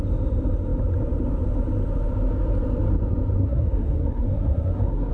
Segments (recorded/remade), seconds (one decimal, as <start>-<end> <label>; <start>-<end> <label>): 0.0-3.4 recorded; 3.4-5.1 remade